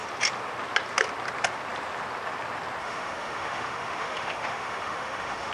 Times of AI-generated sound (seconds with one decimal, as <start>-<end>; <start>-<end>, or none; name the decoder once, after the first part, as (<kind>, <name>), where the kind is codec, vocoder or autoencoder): 2.8-5.5 (autoencoder, DAC-VAE)